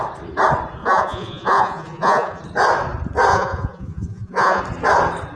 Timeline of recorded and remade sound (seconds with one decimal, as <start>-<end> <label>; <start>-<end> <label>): 0.0-0.8 recorded; 0.8-2.4 remade; 2.4-3.3 recorded; 3.3-4.6 remade; 4.6-5.4 recorded